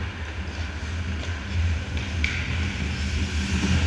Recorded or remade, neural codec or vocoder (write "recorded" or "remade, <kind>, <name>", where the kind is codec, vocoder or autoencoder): recorded